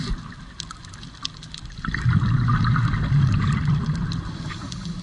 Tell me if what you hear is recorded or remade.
recorded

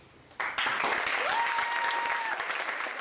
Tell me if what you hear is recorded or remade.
recorded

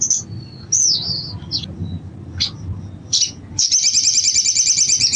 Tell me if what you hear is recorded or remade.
recorded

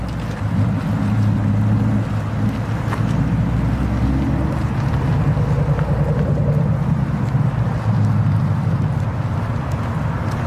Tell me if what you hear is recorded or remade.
recorded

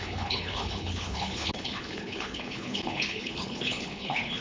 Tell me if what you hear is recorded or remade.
remade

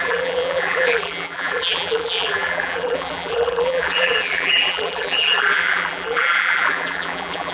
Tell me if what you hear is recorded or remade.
remade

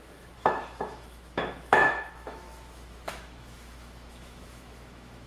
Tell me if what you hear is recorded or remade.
remade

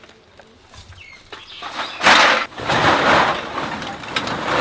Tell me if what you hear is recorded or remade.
recorded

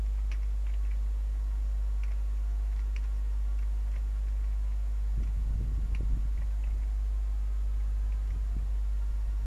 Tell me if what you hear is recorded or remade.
recorded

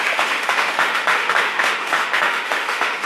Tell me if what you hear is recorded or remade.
remade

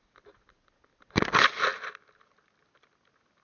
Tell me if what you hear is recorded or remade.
recorded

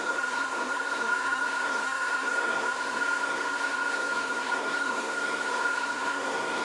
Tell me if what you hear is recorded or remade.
remade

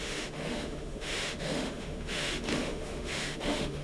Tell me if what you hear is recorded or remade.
remade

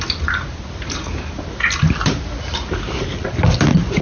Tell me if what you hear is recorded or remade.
recorded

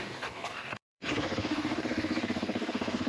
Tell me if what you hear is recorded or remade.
remade